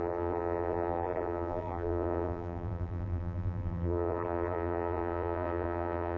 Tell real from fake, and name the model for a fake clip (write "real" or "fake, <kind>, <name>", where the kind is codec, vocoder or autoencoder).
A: fake, vocoder, BigVGAN v2